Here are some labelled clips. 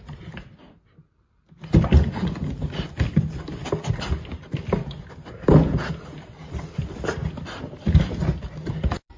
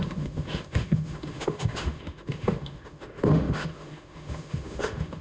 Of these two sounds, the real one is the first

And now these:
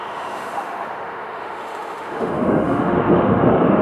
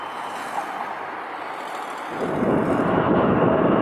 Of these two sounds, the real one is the second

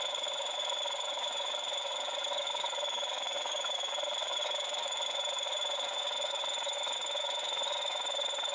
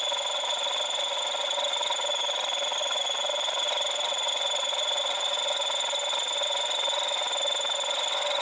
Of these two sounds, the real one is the second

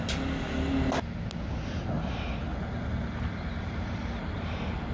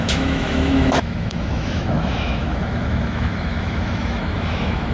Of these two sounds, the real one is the first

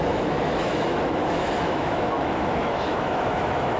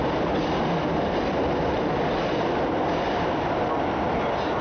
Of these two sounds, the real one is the second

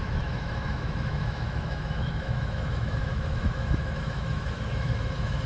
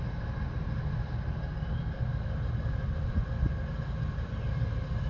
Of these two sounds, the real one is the second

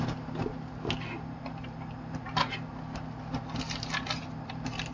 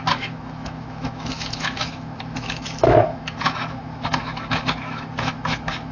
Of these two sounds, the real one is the first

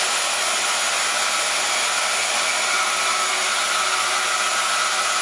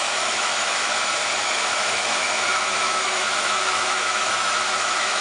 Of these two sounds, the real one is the first